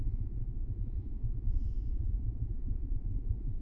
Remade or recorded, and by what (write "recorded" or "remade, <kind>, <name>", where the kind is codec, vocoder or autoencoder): remade, vocoder, Vocos